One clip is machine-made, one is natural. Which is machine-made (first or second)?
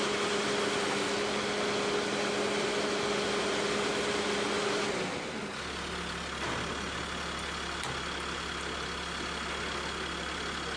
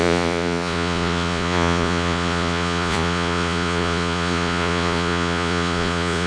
second